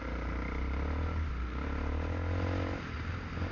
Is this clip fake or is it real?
real